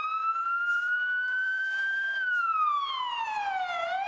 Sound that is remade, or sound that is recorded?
remade